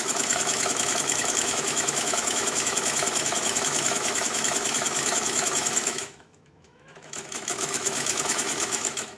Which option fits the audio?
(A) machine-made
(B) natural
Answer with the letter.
A